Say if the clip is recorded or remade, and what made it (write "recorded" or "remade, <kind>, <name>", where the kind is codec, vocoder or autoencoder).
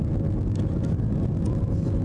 recorded